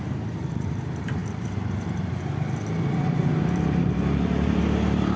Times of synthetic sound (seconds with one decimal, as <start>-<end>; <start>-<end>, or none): 0.0-1.2; 3.1-5.2